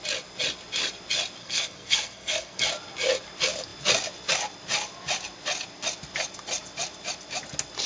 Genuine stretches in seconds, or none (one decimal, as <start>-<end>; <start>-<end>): 0.0-1.4; 2.6-7.9